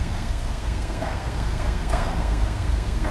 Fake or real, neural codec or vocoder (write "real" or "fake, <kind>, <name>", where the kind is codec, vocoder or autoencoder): fake, codec, SNAC